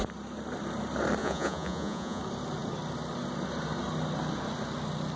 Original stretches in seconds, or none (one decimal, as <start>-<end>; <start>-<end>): 0.0-1.2; 2.2-5.2